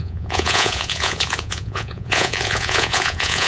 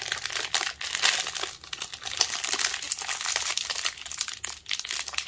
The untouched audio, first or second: second